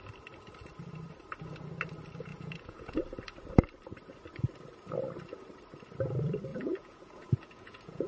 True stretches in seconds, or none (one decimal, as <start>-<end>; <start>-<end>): 0.0-2.3; 3.0-6.5